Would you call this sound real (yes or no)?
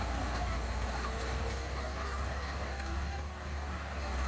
no